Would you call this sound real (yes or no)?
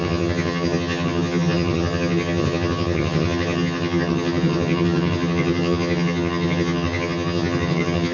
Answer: no